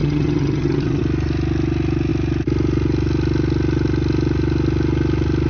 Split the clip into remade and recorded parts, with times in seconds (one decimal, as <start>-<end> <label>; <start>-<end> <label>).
0.0-1.0 remade; 1.0-5.5 recorded